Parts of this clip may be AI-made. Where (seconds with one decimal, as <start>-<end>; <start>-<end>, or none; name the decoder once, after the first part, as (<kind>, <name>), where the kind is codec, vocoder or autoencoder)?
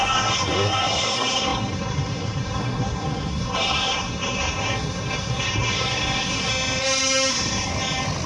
0.0-6.5 (codec, SNAC); 7.3-7.7